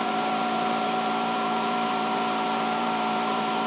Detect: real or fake fake